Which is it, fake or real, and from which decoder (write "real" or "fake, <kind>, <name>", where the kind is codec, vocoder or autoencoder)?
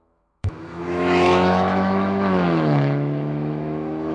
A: fake, autoencoder, DAC-VAE